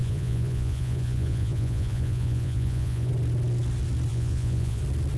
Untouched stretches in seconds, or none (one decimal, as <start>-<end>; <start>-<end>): 3.1-4.1; 4.8-5.2